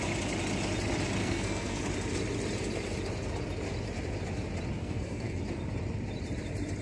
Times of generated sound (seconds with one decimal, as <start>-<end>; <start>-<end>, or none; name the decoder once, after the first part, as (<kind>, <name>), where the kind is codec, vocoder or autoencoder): 1.2-1.8 (codec, SNAC); 4.8-5.4